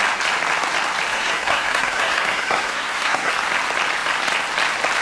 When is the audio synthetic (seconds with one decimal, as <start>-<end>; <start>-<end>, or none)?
1.1-3.3